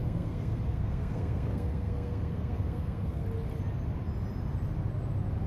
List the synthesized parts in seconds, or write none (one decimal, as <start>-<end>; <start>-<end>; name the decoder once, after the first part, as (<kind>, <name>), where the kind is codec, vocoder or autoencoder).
0.0-3.2 (codec, SNAC)